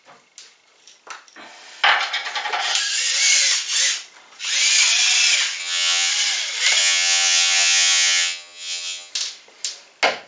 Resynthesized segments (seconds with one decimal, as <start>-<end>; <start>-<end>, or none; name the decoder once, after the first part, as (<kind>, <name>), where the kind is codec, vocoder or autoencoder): 5.6-6.1 (vocoder, HiFi-GAN); 6.8-9.1